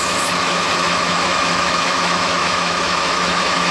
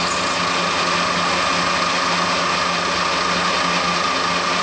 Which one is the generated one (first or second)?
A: first